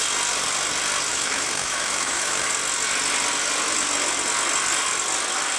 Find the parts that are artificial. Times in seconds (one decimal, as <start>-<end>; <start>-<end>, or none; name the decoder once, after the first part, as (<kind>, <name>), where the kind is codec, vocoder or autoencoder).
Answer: 1.1-2.5 (autoencoder, DAC-VAE)